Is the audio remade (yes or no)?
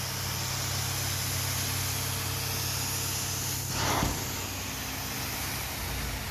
no